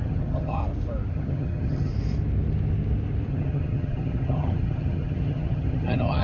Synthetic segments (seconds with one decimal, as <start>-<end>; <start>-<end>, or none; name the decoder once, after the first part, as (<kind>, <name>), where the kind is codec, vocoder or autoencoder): 0.0-0.6 (vocoder, HiFi-GAN); 1.1-1.9; 3.3-6.2